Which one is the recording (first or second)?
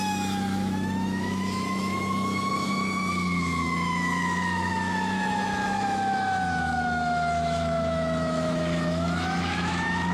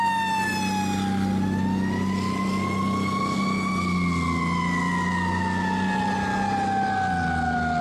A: second